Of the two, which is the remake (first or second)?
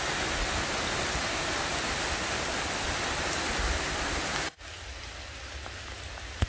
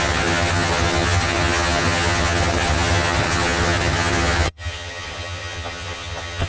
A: second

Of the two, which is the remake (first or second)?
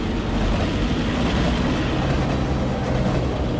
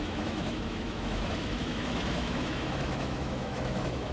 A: second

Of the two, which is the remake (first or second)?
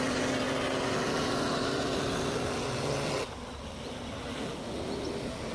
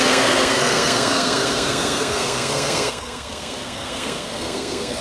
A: second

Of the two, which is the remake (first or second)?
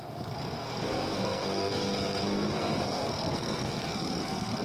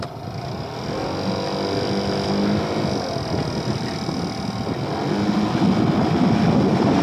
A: first